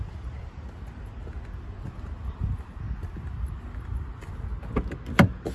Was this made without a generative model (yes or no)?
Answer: yes